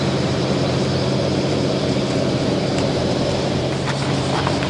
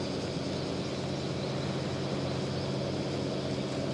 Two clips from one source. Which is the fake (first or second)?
first